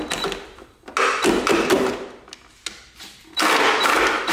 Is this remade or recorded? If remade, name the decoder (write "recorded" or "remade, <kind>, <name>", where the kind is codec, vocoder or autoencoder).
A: recorded